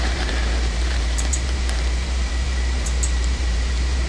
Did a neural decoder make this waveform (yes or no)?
yes